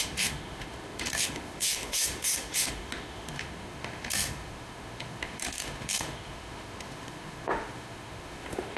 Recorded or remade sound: remade